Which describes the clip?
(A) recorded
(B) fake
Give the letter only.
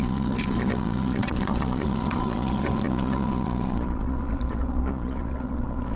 B